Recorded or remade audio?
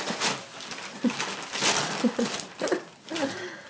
recorded